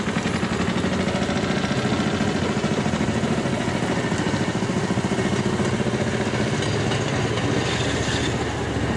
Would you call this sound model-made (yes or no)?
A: no